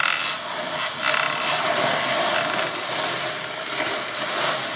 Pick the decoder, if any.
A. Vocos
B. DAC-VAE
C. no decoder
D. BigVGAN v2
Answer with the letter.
C